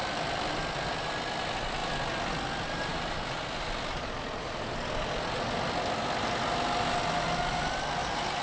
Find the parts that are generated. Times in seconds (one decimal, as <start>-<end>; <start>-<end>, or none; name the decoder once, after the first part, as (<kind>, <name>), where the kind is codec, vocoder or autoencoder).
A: 0.0-0.5 (vocoder, BigVGAN v2)